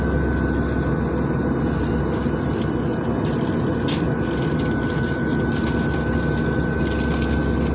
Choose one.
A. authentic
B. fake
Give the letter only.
A